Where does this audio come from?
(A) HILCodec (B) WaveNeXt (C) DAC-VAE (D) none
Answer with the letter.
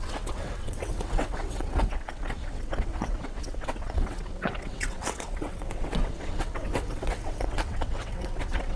B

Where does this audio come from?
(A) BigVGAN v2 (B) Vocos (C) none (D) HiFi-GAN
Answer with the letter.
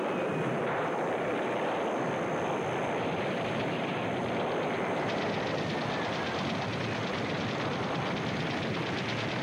C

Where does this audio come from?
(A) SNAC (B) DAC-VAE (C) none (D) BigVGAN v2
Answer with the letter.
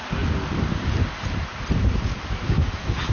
C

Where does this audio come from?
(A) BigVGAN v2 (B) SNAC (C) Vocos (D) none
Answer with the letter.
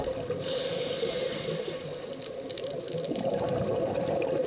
D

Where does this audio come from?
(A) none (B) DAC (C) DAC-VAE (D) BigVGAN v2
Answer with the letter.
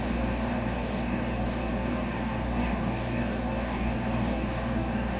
B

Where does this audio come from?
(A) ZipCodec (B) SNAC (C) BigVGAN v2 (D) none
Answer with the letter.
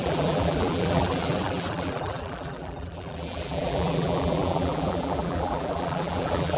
C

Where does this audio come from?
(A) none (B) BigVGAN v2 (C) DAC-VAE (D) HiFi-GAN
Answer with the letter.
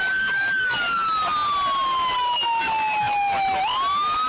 A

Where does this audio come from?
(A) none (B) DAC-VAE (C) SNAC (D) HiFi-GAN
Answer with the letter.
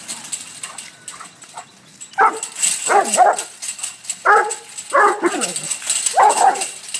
A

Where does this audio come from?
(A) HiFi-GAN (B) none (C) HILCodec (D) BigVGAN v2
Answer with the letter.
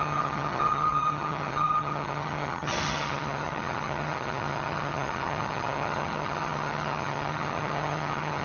A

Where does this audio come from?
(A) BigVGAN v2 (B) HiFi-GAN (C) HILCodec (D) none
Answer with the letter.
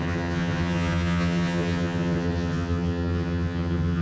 B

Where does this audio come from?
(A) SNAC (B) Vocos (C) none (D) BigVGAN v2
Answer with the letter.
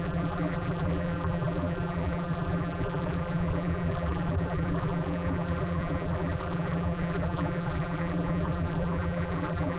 D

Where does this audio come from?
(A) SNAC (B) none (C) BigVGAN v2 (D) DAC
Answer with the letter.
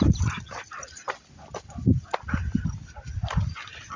C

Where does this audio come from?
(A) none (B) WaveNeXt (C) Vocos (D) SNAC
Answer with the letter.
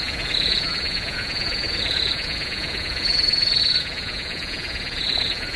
C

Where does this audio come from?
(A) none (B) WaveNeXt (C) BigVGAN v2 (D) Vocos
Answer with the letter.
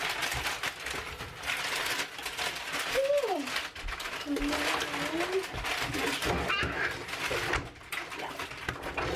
A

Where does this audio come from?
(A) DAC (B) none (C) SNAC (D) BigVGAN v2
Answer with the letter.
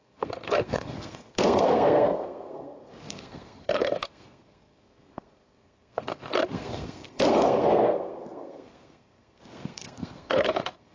C